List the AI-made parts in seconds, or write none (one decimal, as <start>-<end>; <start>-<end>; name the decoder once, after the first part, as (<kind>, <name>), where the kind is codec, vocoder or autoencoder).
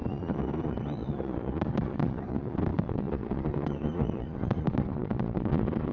0.0-5.9 (vocoder, Vocos)